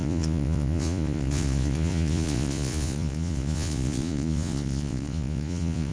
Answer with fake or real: fake